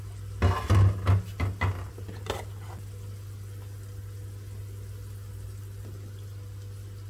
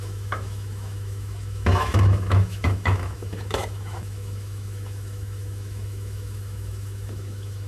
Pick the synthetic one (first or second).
second